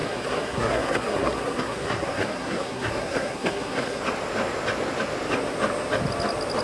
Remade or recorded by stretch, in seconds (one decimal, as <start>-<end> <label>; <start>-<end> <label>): 0.0-4.0 remade; 4.0-6.6 recorded